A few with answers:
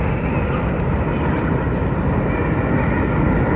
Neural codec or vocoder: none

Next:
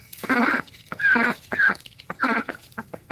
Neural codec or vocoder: codec, SNAC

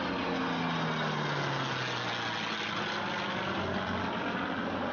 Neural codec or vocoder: none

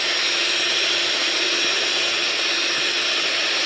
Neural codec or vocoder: none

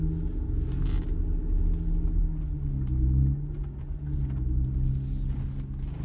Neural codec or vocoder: none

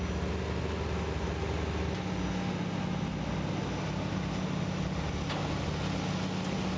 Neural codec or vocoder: none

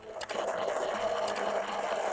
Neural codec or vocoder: none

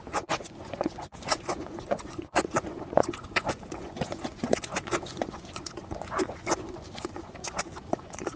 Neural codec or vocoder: vocoder, Vocos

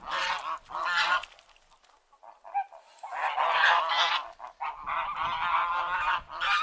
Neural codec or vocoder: none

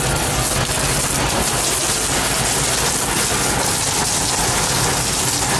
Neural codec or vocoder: none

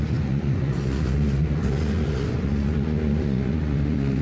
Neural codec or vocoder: vocoder, Vocos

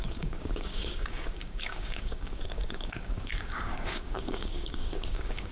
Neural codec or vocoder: codec, DAC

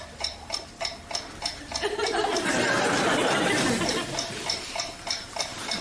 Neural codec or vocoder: none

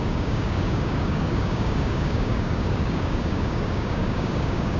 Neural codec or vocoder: codec, DAC